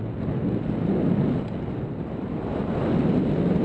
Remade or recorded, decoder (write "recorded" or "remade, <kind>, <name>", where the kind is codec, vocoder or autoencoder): recorded